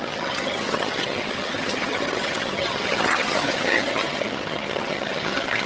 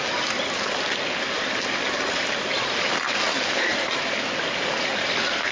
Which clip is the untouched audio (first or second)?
second